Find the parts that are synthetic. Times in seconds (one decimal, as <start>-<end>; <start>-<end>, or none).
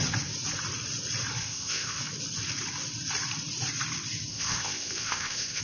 1.4-2.0; 4.3-5.6